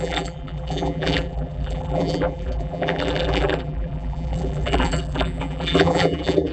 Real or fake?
fake